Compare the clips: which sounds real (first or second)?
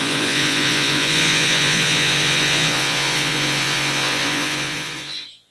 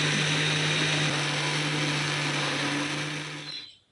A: second